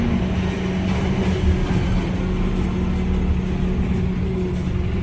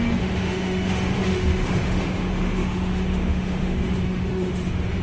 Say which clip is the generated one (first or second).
second